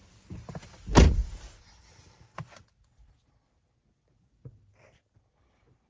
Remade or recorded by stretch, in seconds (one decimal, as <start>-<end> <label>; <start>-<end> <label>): 0.0-5.9 recorded